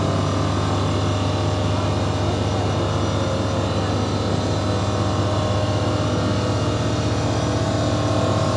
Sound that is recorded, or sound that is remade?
recorded